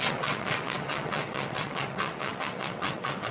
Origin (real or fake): fake